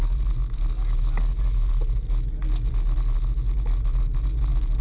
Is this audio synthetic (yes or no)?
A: no